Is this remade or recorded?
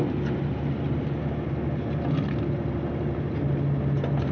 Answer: recorded